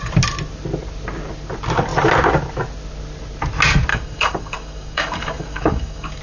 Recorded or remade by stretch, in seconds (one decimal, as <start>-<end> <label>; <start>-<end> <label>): 0.0-3.9 recorded; 3.9-6.2 remade

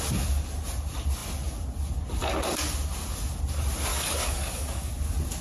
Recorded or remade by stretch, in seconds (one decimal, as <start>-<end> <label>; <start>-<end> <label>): 0.0-3.9 recorded; 3.9-4.9 remade; 4.9-5.4 recorded

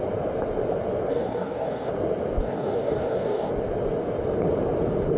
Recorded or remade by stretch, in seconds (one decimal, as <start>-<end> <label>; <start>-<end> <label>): 0.0-1.1 recorded; 1.1-1.9 remade; 1.9-2.4 recorded; 2.4-3.5 remade; 3.5-5.2 recorded

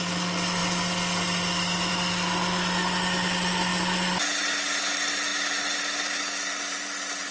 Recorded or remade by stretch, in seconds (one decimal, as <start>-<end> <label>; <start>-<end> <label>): 0.0-7.3 recorded

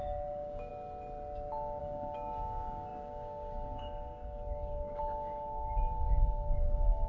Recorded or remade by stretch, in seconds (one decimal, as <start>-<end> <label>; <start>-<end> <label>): 0.0-0.7 remade; 0.7-1.8 recorded; 1.8-7.1 remade

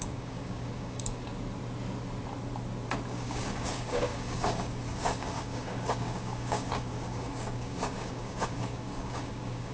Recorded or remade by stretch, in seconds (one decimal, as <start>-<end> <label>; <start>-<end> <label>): 0.0-1.3 remade; 1.3-3.1 recorded; 3.1-9.7 remade

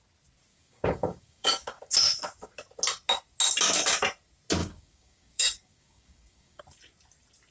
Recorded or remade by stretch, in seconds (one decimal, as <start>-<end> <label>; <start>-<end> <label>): 0.0-0.5 recorded; 0.5-1.8 remade; 1.8-4.6 recorded; 4.6-6.6 remade; 6.6-7.5 recorded

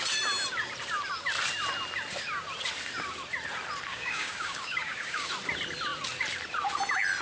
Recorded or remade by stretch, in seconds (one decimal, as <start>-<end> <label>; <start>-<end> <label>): 0.0-3.9 recorded; 3.9-5.3 remade; 5.3-7.2 recorded